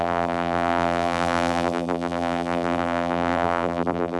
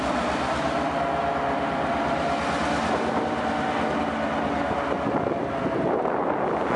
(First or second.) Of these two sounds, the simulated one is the first